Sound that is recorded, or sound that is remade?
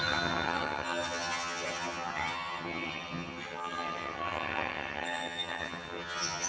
remade